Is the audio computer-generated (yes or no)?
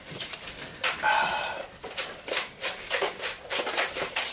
yes